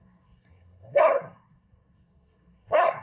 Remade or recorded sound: remade